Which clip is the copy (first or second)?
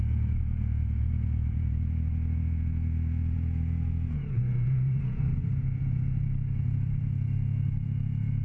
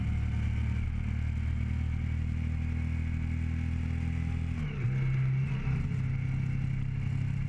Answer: first